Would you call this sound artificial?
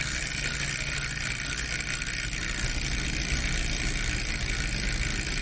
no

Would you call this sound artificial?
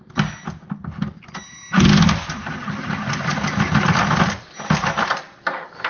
no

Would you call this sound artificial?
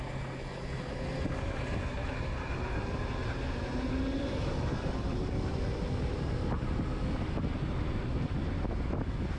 no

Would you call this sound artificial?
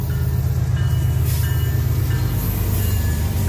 no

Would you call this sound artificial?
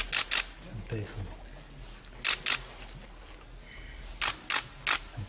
no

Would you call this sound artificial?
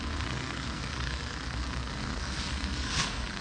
yes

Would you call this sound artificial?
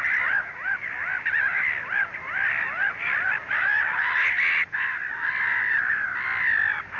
no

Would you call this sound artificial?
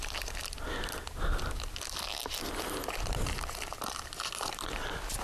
no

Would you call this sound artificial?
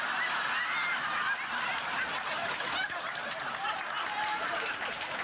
no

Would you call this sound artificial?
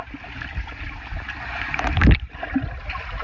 no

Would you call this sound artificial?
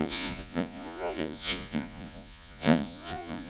yes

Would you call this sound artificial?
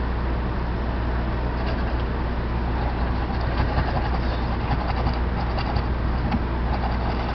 yes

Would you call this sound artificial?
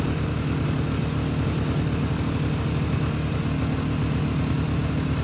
no